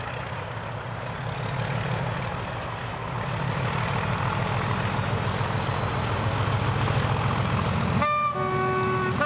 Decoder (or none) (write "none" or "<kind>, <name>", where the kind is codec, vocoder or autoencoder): none